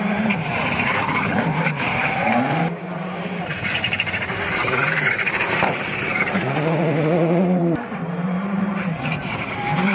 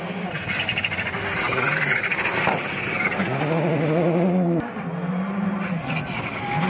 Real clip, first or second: second